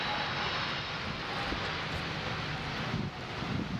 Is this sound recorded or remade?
recorded